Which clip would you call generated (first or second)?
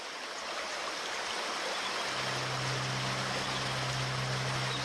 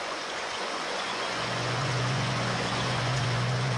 second